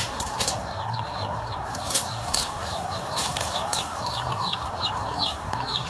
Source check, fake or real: fake